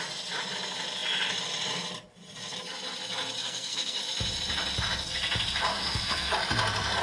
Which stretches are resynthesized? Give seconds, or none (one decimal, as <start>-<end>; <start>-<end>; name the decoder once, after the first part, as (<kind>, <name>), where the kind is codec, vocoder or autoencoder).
3.4-4.0 (codec, SNAC); 5.7-6.3